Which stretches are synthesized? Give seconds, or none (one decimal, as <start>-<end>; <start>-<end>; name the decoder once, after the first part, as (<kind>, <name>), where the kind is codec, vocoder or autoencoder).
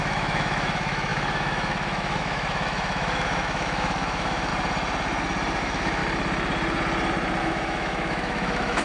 0.0-4.5 (autoencoder, DAC-VAE); 5.6-6.0; 7.4-8.8